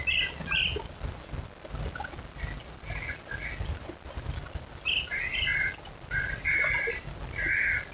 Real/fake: real